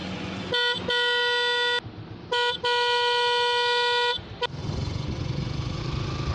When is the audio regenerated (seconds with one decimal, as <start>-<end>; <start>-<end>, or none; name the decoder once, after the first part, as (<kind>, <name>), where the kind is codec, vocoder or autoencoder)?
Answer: 0.0-0.5 (vocoder, Vocos); 4.6-5.8